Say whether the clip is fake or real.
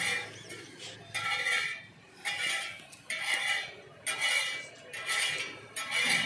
real